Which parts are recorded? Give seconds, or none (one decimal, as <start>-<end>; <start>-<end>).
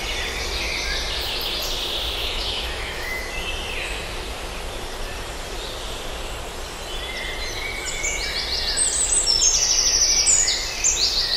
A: 0.0-2.2; 3.2-11.4